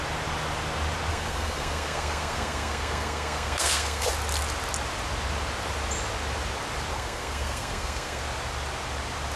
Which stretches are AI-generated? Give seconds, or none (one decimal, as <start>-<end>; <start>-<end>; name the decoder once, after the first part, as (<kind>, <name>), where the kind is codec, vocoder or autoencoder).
1.1-4.1 (codec, SNAC); 6.9-8.2